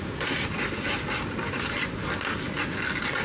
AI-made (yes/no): no